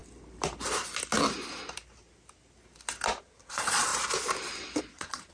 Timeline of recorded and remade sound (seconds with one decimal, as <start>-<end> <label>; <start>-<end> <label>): 0.0-3.2 recorded; 3.2-3.9 remade; 3.9-4.8 recorded; 4.8-5.3 remade